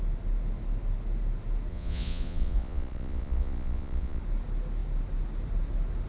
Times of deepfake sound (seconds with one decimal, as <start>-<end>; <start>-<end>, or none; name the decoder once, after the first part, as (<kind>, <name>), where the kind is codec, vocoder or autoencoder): 1.7-4.2 (vocoder, Vocos)

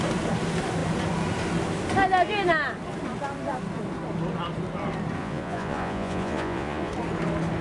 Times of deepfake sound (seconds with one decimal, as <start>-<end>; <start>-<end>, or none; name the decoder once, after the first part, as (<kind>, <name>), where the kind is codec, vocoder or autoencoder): 5.2-6.9 (vocoder, Vocos)

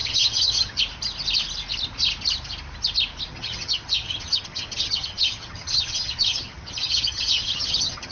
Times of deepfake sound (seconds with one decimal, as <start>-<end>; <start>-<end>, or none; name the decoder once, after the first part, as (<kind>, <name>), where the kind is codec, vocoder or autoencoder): 0.0-0.8 (vocoder, HiFi-GAN); 3.3-8.1

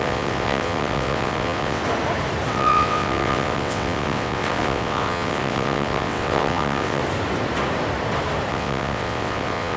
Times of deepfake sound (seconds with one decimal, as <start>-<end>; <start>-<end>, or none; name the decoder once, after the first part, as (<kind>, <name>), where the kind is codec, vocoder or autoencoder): 0.0-1.8 (vocoder, WaveNeXt); 2.5-7.0; 8.5-9.8

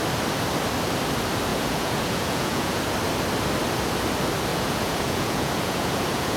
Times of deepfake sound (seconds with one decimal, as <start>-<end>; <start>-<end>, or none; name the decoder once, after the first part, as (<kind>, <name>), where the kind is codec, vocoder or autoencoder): 1.5-2.8 (vocoder, Vocos); 4.5-6.4

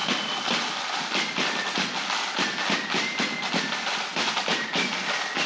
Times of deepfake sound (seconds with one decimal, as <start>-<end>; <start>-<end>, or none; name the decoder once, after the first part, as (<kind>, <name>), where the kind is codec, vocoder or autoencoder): none